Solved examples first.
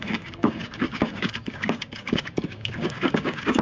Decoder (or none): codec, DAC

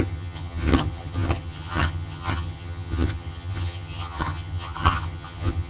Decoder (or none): vocoder, HiFi-GAN